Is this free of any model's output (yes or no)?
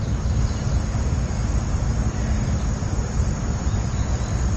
no